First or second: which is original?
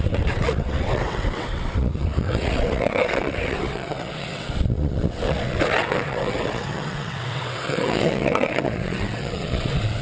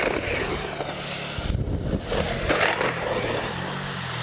second